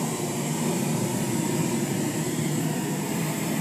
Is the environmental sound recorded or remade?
remade